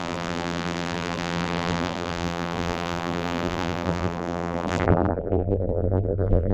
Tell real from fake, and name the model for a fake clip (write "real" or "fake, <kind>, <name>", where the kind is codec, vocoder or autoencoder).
fake, vocoder, BigVGAN v2